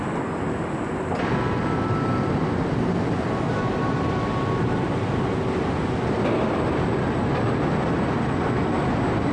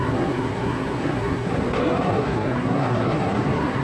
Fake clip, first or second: second